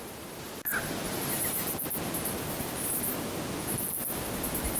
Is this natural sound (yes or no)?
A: yes